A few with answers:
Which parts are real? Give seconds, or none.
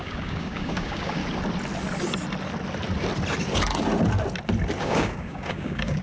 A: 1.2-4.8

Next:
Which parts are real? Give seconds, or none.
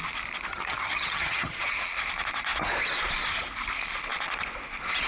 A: 0.0-0.5; 1.7-5.1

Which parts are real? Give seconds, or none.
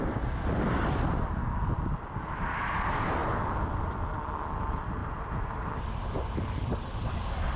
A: 0.0-5.0; 5.7-7.6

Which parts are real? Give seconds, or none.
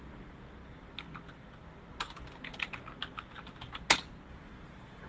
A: 0.0-5.1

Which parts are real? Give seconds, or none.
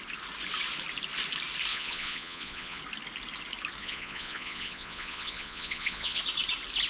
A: 0.0-1.7; 2.8-3.8; 6.2-6.9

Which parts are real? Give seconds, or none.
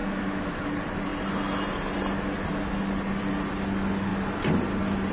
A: 0.6-5.1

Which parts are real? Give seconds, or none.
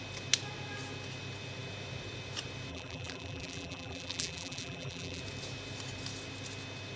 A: 0.0-2.7; 5.2-7.0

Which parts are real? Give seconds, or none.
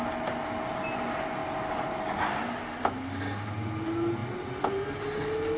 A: 0.0-5.6